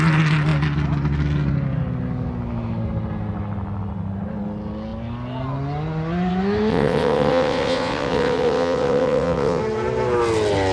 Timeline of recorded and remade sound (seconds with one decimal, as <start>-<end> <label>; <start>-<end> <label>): 0.0-6.7 recorded; 6.7-9.6 remade; 9.6-10.7 recorded